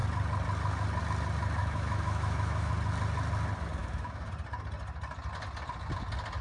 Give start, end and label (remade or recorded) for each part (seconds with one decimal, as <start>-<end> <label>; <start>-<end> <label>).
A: 0.0-1.6 recorded; 1.6-2.7 remade; 2.7-3.8 recorded; 3.8-4.3 remade; 4.3-6.4 recorded